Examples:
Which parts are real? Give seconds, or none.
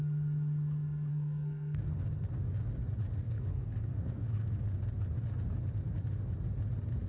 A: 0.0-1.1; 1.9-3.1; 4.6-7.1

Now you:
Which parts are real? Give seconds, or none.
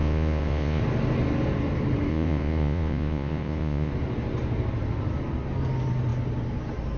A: 0.8-2.1; 3.9-7.0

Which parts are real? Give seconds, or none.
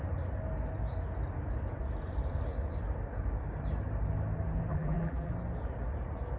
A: 0.0-4.7; 5.3-6.4